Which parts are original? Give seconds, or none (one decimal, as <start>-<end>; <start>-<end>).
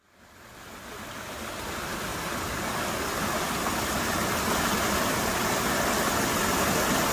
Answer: 0.0-7.1